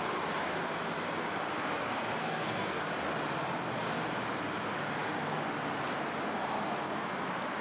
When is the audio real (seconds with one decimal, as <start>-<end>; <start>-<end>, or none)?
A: 0.0-2.2; 2.8-7.6